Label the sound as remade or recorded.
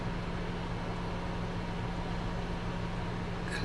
recorded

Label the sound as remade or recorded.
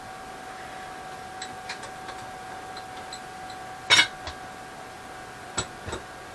recorded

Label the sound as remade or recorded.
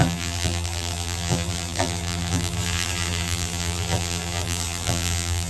remade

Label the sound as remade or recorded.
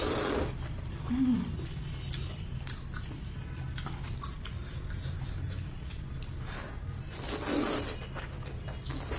recorded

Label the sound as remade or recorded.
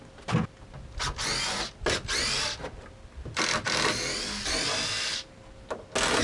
recorded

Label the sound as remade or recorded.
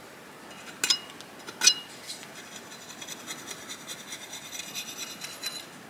recorded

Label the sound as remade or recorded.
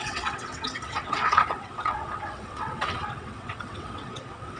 remade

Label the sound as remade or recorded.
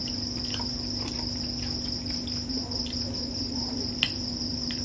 recorded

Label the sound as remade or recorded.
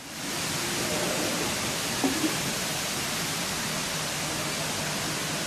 recorded